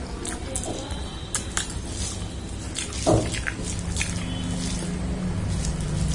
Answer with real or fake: real